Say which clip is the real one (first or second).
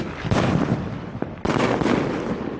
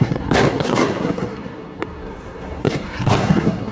first